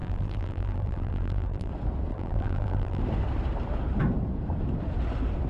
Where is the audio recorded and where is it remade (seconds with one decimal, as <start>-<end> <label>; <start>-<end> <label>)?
0.0-1.7 remade; 1.7-2.1 recorded; 2.1-3.0 remade; 3.0-5.5 recorded